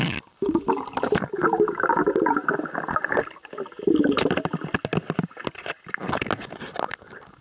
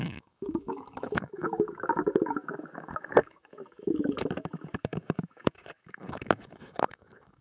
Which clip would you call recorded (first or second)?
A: first